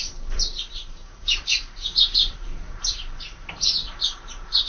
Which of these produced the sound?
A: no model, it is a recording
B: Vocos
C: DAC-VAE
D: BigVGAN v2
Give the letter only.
D